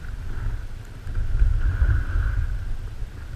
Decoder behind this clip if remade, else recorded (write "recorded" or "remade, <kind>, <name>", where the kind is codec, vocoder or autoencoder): recorded